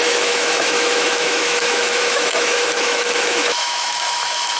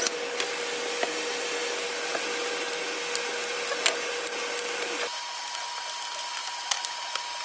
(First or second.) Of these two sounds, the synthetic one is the first